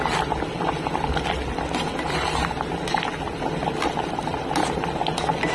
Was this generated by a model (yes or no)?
no